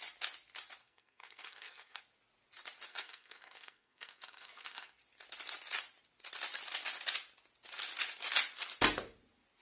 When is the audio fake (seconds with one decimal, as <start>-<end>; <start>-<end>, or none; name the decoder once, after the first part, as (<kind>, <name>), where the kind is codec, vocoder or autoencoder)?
0.8-2.0 (codec, SNAC); 2.9-5.0